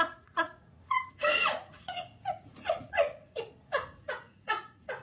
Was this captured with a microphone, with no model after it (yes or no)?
no